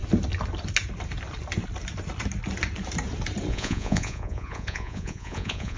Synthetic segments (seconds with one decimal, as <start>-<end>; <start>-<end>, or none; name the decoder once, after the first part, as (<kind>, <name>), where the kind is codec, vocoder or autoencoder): 3.5-5.8 (vocoder, Vocos)